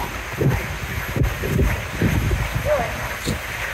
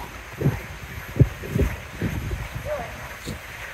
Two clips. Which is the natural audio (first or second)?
first